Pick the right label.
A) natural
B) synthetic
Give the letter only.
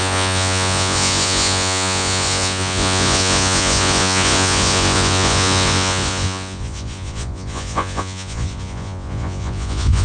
B